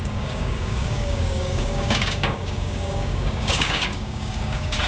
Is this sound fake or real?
fake